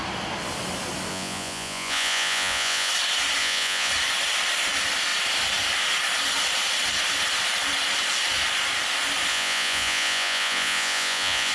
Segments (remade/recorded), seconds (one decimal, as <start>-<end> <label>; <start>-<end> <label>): 0.0-1.1 recorded; 1.1-2.9 remade; 2.9-3.4 recorded; 3.4-3.9 remade; 3.9-9.3 recorded; 9.3-11.5 remade